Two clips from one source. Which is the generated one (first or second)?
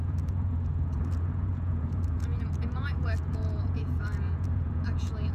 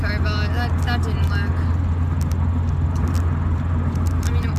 first